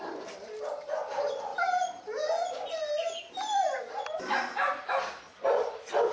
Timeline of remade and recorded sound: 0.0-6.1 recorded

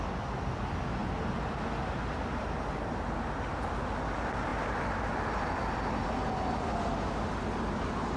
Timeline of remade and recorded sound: 0.0-8.2 recorded

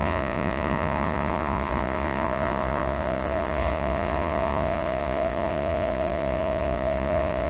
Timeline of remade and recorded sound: 0.0-7.5 remade